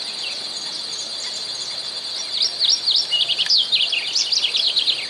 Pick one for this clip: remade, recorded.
recorded